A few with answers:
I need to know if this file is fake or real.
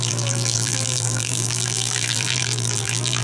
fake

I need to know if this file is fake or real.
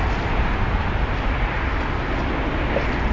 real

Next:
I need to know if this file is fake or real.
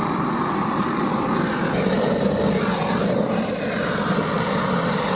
real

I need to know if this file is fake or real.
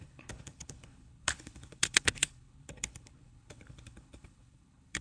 fake